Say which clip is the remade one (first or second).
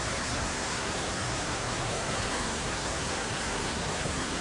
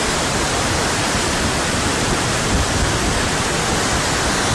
first